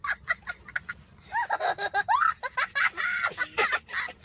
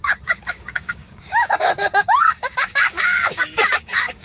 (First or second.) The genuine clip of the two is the first